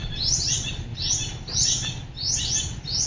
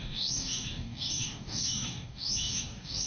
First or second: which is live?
first